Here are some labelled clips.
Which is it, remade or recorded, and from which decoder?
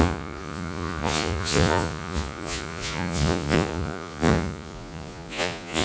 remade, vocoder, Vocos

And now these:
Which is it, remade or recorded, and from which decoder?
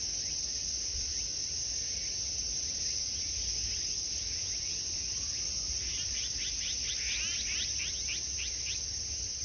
recorded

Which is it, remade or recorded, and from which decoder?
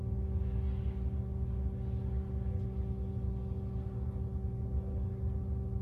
recorded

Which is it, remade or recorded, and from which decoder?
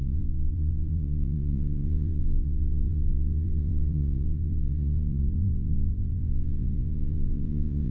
remade, vocoder, Vocos